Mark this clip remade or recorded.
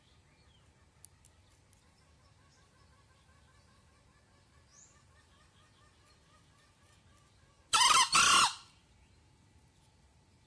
recorded